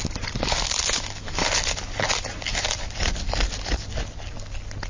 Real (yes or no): yes